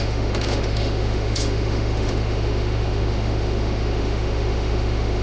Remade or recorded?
remade